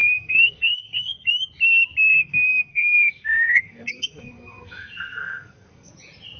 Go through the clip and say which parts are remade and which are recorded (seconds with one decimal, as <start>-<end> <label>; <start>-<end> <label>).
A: 0.0-1.3 remade; 1.3-2.1 recorded; 2.1-5.9 remade; 5.9-6.4 recorded